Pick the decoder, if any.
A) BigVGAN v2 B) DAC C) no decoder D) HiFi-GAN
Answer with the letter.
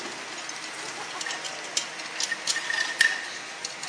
C